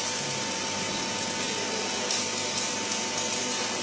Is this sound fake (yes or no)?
no